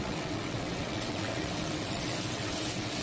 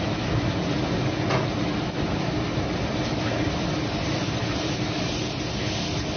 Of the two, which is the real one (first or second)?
second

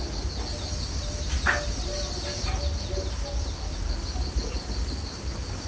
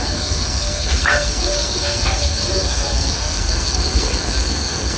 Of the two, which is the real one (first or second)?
first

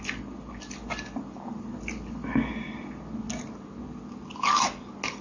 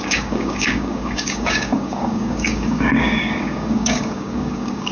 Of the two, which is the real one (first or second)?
first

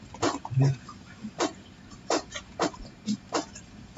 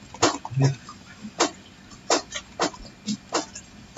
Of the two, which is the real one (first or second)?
second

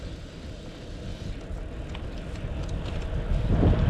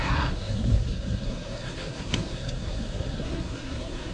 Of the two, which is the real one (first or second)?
first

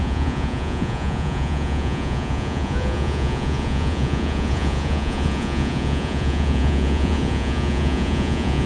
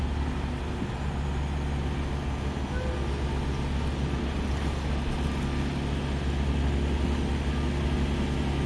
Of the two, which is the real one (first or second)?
second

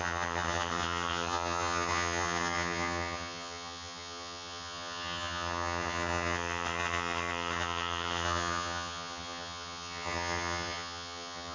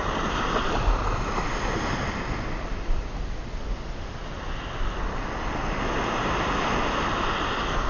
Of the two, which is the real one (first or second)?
second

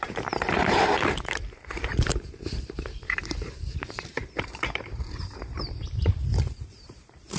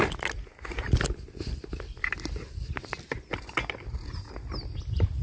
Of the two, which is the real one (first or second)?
second